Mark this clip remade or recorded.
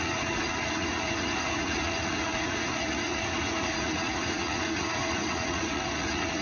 remade